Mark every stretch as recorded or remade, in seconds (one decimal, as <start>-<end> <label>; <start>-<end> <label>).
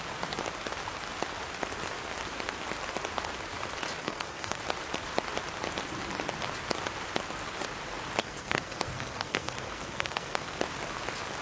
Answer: 0.0-4.0 recorded; 4.0-4.6 remade; 4.6-8.2 recorded; 8.2-10.6 remade; 10.6-11.4 recorded